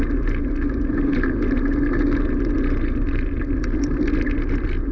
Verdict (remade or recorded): recorded